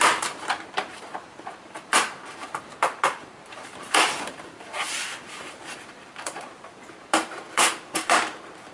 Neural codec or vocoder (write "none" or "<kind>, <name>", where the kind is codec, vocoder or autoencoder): vocoder, BigVGAN v2